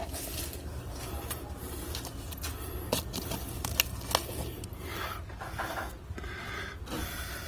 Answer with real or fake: real